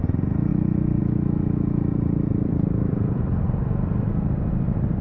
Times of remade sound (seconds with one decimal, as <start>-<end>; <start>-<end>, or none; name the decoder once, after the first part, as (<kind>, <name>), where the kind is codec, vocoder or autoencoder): 0.5-1.0 (vocoder, BigVGAN v2); 2.3-4.1